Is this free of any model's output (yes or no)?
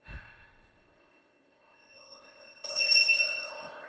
no